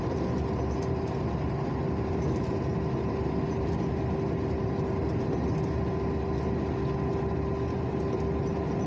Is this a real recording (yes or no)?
yes